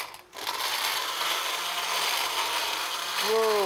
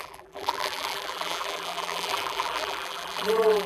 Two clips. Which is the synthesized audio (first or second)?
second